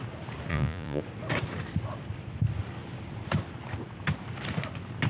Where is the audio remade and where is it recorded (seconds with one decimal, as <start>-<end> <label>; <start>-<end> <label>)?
0.0-0.5 recorded; 0.5-1.0 remade; 1.0-5.1 recorded